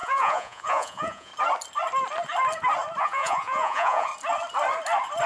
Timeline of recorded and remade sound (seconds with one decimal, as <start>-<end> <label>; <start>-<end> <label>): 0.0-1.3 remade; 1.3-3.0 recorded; 3.0-4.1 remade; 4.1-5.3 recorded

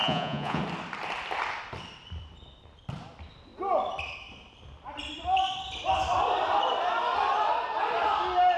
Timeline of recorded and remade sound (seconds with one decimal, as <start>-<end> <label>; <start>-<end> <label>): 0.0-0.6 remade; 0.6-8.6 recorded

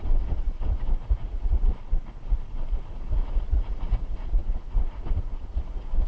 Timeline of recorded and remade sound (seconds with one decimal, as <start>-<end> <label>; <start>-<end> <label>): 0.0-1.7 remade; 1.7-2.9 recorded; 2.9-6.1 remade

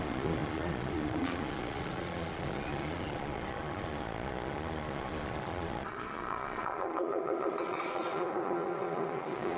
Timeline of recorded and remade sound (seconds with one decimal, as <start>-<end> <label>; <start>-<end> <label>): 0.0-9.6 remade

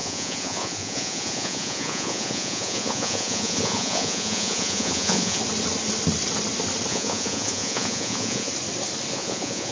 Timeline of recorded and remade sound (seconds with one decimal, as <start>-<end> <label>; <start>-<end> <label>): 0.0-5.4 remade; 5.4-6.9 recorded; 6.9-8.5 remade; 8.5-9.1 recorded; 9.1-9.7 remade

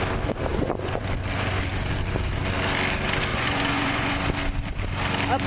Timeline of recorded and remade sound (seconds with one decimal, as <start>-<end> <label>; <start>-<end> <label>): 0.0-0.5 recorded; 0.5-1.0 remade; 1.0-3.3 recorded; 3.3-4.2 remade; 4.2-5.5 recorded

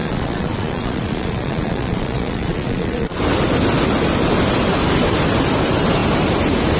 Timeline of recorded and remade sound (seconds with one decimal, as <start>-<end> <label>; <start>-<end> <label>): 0.0-3.2 remade; 3.2-6.8 recorded